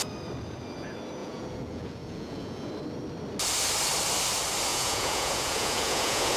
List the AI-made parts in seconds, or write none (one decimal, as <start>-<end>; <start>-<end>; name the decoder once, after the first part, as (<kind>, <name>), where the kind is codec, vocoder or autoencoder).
1.2-2.7 (vocoder, Vocos); 4.7-6.4